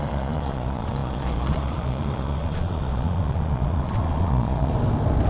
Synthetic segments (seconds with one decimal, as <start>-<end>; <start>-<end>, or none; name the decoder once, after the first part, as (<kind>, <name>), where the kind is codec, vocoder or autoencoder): 0.0-4.7 (vocoder, Vocos)